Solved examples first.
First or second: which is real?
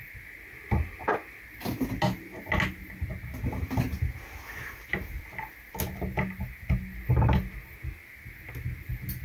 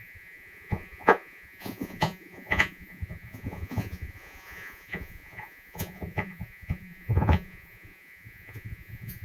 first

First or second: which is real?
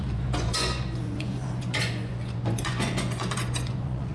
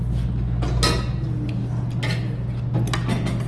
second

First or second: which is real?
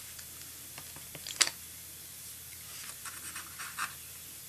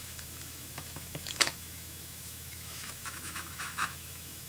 first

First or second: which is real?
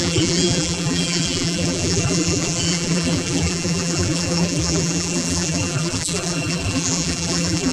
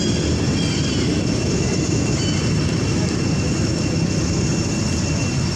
second